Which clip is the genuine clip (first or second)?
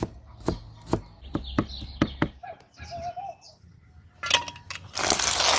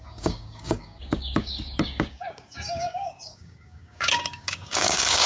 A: first